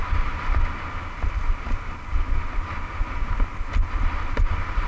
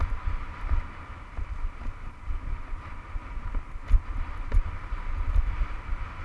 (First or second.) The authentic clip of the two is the first